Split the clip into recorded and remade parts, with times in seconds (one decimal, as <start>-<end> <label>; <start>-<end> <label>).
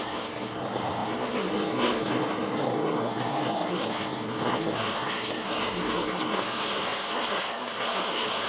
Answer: 0.0-8.5 remade